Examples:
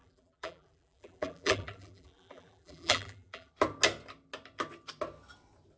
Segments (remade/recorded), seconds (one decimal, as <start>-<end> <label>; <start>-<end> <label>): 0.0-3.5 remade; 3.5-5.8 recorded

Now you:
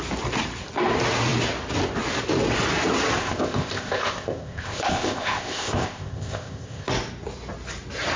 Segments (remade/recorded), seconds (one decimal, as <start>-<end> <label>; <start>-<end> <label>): 0.0-3.2 recorded; 3.2-6.9 remade; 6.9-8.2 recorded

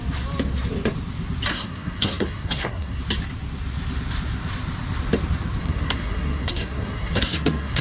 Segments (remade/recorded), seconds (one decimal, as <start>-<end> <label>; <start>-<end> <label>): 0.0-1.5 recorded; 1.5-3.0 remade; 3.0-5.6 recorded; 5.6-7.8 remade

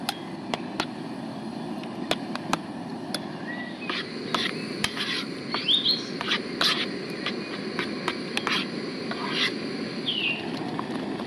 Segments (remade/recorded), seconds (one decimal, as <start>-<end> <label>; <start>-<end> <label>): 0.0-11.3 recorded

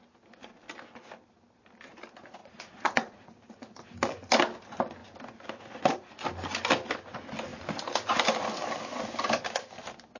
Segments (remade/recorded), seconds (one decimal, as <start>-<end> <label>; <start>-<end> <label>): 0.0-2.4 recorded; 2.4-3.3 remade; 3.3-10.2 recorded

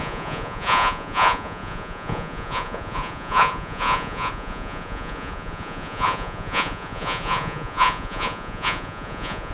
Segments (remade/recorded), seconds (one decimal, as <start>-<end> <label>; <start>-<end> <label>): 0.0-9.5 remade